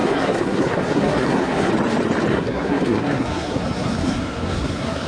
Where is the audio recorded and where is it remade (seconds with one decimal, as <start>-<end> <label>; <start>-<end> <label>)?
0.0-1.7 remade; 1.7-2.3 recorded; 2.3-5.1 remade